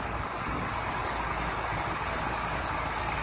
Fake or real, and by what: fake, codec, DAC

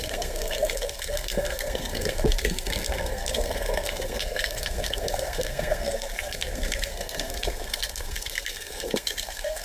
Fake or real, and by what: fake, codec, SNAC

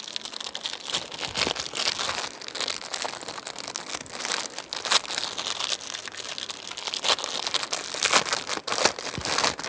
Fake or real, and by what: real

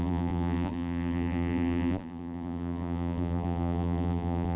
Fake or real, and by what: fake, vocoder, BigVGAN v2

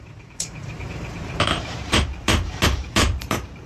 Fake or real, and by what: fake, vocoder, BigVGAN v2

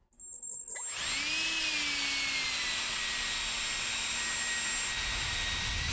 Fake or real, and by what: real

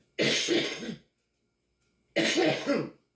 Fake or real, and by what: real